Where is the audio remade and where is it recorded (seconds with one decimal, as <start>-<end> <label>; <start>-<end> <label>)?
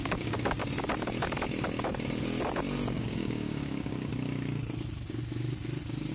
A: 0.0-0.6 remade; 0.6-2.9 recorded; 2.9-4.1 remade; 4.1-6.1 recorded